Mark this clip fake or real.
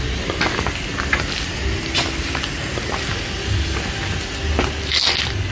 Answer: real